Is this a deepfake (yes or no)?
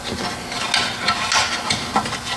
no